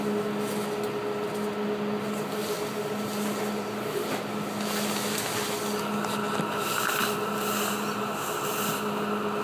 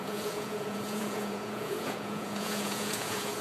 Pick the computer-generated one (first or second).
second